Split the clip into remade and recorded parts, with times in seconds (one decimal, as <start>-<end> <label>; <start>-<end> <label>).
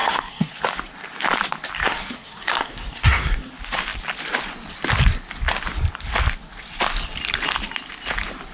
0.0-0.5 remade; 0.5-1.9 recorded; 1.9-3.5 remade; 3.5-8.5 recorded